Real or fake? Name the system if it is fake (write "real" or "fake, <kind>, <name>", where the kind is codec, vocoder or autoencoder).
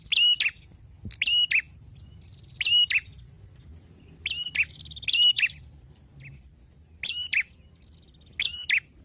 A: real